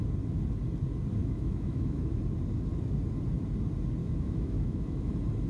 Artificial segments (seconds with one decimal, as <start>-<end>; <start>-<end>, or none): 1.2-2.2; 4.0-5.1